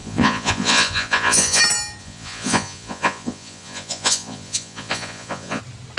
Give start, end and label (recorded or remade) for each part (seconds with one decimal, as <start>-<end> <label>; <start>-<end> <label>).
0.0-1.6 remade; 1.6-2.0 recorded; 2.0-5.6 remade; 5.6-6.0 recorded